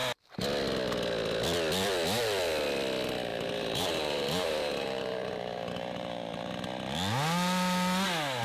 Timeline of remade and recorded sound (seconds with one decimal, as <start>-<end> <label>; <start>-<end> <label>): 0.0-3.3 recorded; 3.3-6.5 remade; 6.5-8.4 recorded